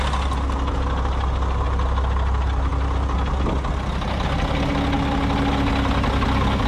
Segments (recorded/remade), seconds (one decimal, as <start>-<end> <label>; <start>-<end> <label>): 0.0-6.7 recorded